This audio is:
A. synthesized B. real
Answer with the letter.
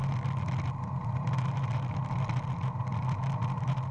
B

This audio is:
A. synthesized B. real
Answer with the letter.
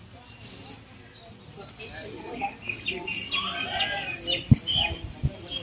B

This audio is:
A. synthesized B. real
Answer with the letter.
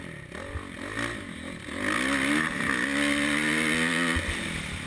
B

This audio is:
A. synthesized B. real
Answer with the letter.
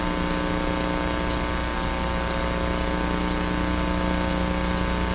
B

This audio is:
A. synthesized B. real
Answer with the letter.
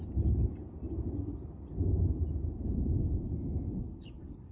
B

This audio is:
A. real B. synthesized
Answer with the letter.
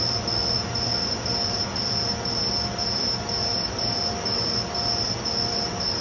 A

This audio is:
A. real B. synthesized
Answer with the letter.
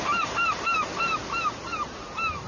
A